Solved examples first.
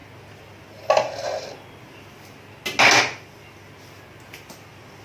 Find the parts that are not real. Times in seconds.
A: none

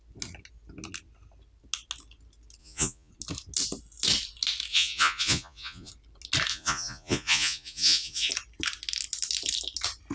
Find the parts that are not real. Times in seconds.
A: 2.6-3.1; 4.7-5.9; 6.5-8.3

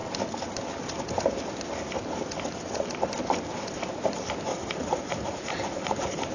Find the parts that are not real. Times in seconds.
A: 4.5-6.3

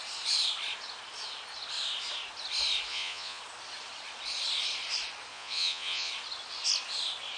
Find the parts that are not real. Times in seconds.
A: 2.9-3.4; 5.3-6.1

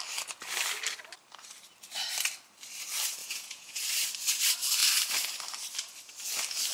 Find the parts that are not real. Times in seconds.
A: 3.2-3.8

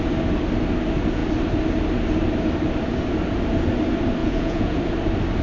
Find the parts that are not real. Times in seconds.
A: 4.2-4.8

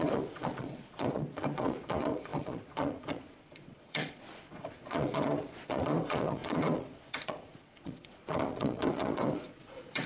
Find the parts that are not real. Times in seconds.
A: 0.0-10.1

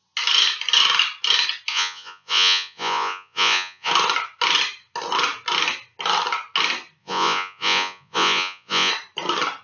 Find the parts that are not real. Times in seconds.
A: 1.7-3.9; 7.0-8.9